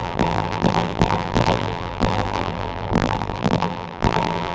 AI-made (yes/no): yes